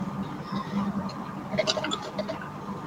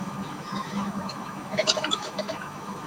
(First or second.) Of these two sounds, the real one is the first